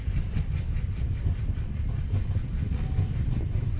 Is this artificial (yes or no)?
no